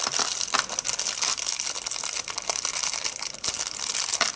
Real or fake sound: real